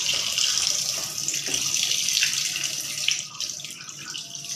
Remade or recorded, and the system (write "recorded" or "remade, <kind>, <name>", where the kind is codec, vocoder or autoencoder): recorded